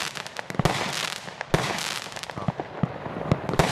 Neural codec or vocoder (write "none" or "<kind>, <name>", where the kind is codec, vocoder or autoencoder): none